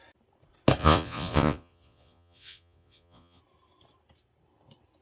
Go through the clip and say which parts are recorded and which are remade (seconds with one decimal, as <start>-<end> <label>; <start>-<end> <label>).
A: 0.0-0.8 recorded; 0.8-3.4 remade; 3.4-5.0 recorded